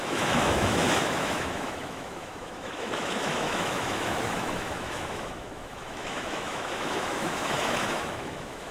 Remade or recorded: remade